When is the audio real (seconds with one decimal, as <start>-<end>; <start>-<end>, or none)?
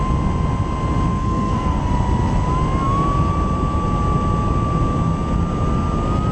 0.0-1.1; 1.9-6.3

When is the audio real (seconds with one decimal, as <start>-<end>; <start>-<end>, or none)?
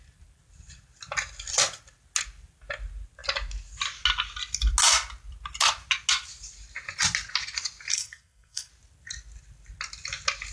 0.0-7.9; 8.7-10.5